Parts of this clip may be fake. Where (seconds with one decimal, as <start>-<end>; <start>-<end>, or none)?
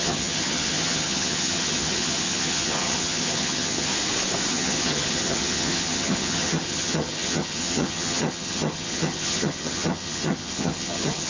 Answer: 0.0-3.9; 4.5-11.3